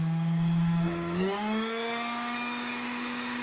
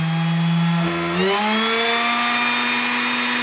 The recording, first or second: second